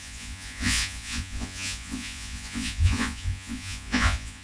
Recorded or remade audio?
remade